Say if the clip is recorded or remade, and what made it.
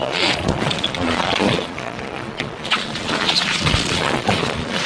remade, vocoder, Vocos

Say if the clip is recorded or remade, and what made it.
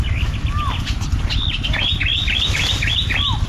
recorded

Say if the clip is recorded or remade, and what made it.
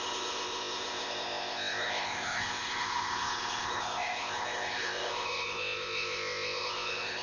remade, codec, ZipCodec